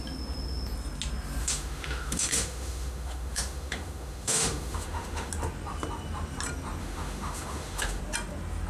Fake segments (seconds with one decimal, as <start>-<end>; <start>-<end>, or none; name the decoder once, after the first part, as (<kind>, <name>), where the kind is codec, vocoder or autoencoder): 1.4-5.3 (autoencoder, DAC-VAE); 6.8-8.0